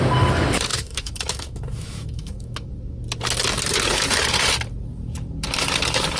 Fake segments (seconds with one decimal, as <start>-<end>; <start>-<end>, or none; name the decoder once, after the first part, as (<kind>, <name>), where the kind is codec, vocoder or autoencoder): 0.7-2.7 (autoencoder, DAC-VAE)